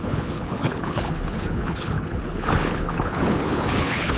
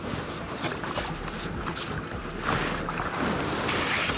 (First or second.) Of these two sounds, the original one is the second